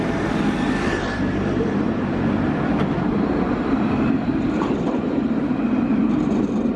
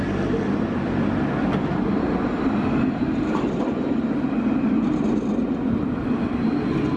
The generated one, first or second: first